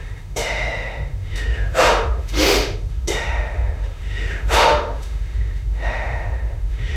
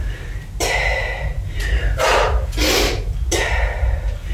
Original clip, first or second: second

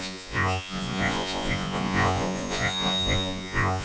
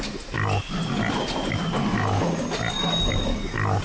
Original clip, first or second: second